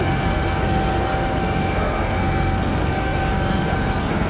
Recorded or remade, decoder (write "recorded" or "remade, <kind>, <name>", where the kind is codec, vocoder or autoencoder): remade, codec, SNAC